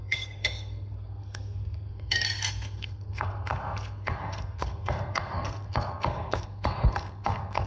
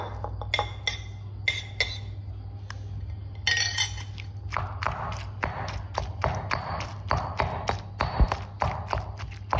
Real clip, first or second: second